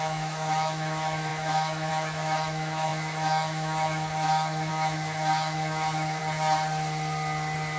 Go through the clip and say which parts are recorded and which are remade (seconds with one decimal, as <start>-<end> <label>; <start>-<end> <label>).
0.0-6.2 remade; 6.2-7.8 recorded